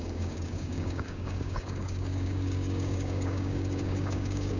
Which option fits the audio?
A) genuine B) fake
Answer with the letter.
B